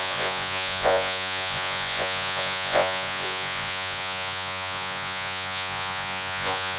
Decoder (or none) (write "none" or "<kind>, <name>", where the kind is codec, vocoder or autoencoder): vocoder, Vocos